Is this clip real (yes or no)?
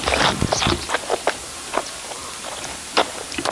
yes